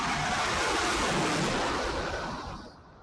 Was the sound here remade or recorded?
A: recorded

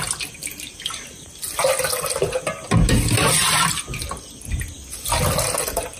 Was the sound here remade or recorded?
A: recorded